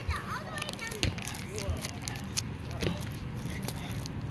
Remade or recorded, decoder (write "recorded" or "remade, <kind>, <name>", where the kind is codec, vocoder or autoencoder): recorded